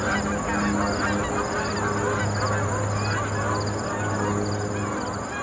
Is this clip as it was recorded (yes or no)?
yes